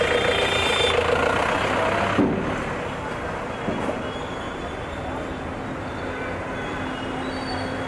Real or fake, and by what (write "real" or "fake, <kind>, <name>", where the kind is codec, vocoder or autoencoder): real